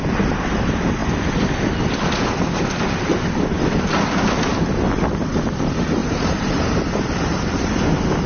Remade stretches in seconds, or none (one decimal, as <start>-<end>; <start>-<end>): 6.0-6.8